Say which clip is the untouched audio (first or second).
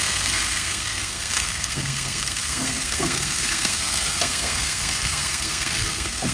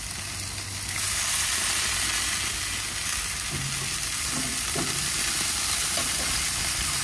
second